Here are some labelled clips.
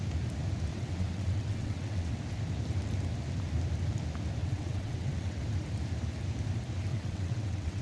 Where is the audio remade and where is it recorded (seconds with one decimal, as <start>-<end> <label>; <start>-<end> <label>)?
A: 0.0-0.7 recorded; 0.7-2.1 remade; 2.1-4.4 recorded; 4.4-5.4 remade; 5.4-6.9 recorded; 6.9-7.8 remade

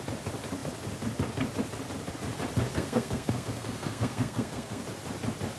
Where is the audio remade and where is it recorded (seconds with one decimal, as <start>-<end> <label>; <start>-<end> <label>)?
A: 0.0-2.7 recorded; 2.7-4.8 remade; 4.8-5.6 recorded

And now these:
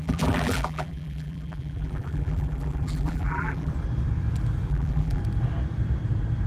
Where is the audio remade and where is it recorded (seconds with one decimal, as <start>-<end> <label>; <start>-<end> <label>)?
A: 0.0-3.7 remade; 3.7-4.7 recorded; 4.7-5.2 remade; 5.2-6.5 recorded

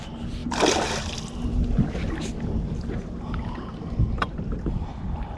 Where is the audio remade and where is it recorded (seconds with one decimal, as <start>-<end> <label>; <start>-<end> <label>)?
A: 0.0-5.4 recorded

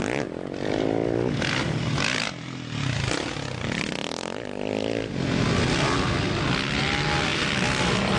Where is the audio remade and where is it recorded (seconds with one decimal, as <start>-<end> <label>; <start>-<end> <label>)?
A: 0.0-8.2 recorded

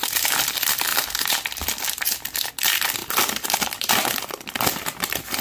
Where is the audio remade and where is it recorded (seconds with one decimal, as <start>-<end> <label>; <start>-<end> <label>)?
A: 0.0-5.4 recorded

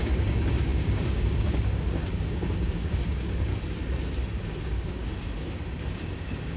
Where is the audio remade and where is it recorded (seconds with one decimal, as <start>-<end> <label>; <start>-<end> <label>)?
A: 0.0-3.5 remade; 3.5-4.6 recorded; 4.6-5.0 remade; 5.0-5.9 recorded; 5.9-6.6 remade